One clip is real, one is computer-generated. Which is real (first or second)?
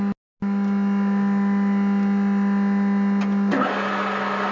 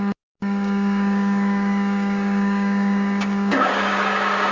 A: first